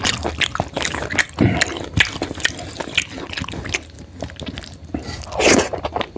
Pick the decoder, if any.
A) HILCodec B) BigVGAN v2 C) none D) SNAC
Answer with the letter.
C